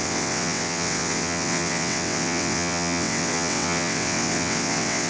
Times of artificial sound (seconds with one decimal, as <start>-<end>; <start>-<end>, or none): 0.0-5.1